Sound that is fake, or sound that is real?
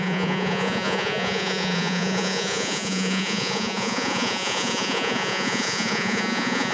fake